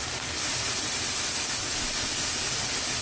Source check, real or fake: real